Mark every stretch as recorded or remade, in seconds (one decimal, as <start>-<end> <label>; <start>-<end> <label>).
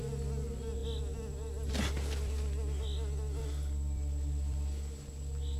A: 0.0-5.6 recorded